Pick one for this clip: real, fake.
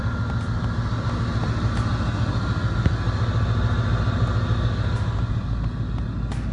real